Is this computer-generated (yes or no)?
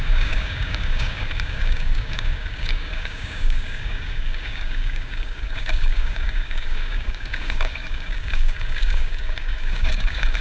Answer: yes